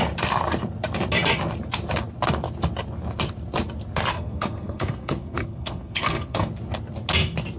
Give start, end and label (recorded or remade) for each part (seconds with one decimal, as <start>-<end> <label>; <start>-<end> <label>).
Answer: 0.0-4.1 recorded; 4.1-6.5 remade; 6.5-7.6 recorded